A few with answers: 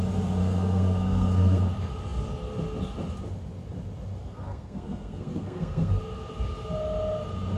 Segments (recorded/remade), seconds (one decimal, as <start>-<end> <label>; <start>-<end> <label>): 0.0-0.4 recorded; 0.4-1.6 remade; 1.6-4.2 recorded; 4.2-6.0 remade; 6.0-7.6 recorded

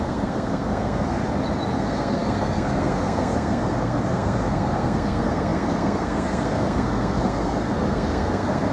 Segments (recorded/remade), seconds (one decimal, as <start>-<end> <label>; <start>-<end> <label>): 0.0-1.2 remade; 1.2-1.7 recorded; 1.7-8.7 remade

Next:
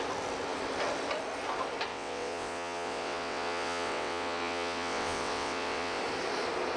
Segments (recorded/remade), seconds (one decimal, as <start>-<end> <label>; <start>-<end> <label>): 0.0-1.9 recorded; 1.9-6.0 remade; 6.0-6.8 recorded